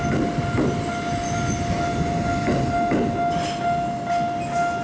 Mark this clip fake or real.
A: real